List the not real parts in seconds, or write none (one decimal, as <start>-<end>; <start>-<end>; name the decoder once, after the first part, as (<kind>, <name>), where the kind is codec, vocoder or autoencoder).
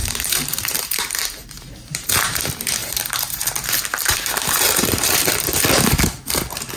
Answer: 0.0-2.4 (vocoder, BigVGAN v2); 2.8-5.3